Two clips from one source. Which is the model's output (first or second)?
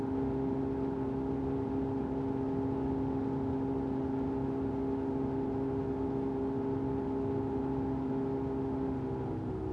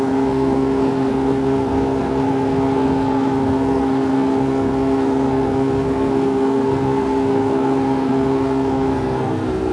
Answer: second